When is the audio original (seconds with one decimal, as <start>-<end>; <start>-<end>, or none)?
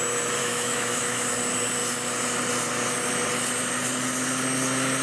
0.0-0.4; 1.3-5.0